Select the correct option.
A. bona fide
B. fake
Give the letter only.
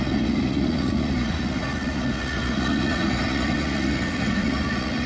B